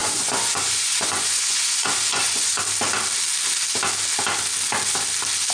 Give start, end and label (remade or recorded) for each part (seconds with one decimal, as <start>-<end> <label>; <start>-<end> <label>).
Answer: 0.0-2.6 remade; 2.6-5.5 recorded